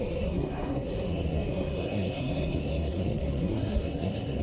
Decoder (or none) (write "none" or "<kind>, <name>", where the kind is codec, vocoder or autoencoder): codec, SNAC